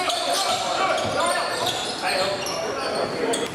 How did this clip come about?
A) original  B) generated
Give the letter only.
A